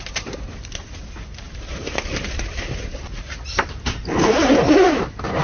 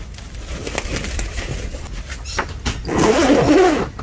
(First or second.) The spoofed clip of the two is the first